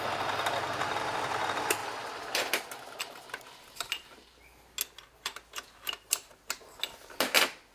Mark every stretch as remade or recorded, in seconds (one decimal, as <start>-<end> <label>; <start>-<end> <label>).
0.0-7.7 recorded